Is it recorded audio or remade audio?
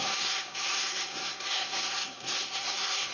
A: remade